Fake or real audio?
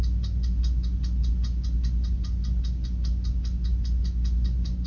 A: real